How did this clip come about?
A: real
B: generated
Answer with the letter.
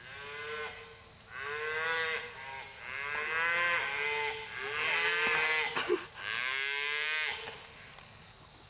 A